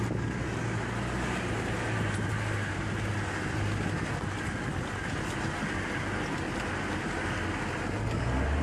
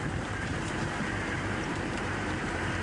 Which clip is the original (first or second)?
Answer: first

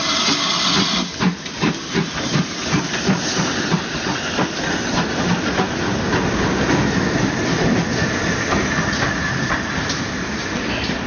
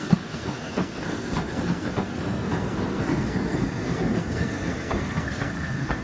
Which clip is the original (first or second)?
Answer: first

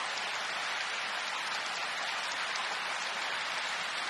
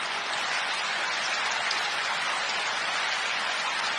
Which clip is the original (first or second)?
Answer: first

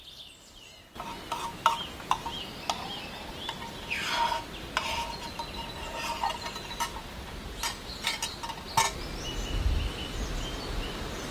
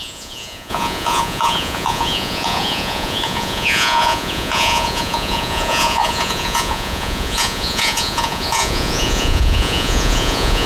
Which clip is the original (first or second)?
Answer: first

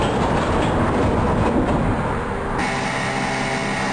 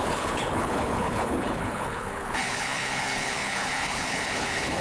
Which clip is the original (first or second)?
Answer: first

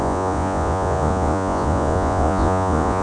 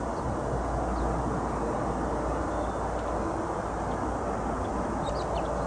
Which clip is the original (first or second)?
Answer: second